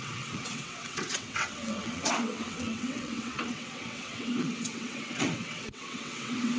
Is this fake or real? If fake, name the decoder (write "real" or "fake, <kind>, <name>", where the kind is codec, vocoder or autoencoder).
fake, vocoder, WaveNeXt